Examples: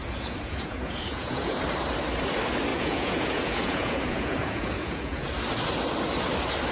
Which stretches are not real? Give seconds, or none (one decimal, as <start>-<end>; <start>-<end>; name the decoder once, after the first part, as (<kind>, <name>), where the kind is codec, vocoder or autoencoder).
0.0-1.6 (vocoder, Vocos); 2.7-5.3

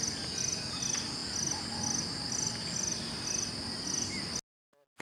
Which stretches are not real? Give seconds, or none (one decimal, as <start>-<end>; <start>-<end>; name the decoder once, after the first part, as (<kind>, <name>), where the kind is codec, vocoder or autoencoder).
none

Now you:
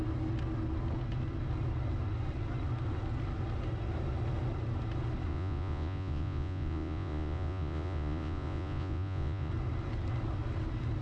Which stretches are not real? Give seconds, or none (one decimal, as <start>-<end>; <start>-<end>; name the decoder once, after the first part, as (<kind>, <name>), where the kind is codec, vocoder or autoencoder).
5.3-9.5 (vocoder, Vocos)